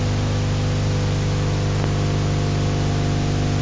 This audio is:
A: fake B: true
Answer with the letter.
B